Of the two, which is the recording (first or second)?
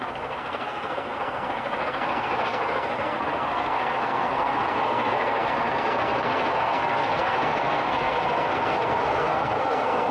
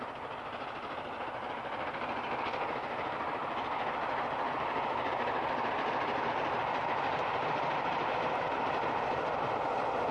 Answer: second